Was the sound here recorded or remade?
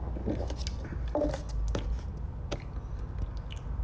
recorded